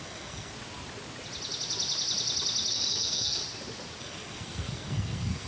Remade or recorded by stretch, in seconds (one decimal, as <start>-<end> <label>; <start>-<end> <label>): 0.0-0.5 remade; 0.5-2.7 recorded; 2.7-3.4 remade; 3.4-4.0 recorded; 4.0-5.5 remade